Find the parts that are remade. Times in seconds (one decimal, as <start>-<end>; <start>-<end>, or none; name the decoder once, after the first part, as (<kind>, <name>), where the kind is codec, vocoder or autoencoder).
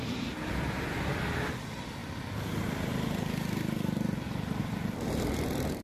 none